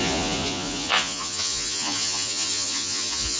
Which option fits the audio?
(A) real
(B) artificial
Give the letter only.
B